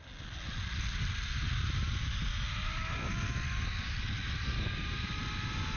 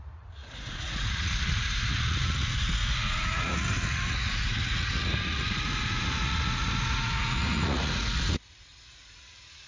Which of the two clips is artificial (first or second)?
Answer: second